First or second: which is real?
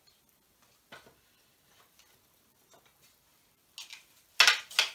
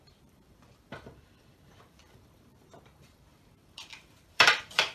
first